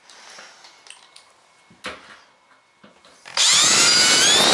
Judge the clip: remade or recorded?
recorded